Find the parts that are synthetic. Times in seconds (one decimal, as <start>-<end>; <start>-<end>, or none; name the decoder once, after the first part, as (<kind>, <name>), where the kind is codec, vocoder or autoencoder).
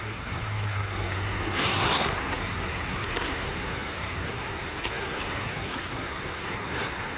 0.0-7.2 (codec, SNAC)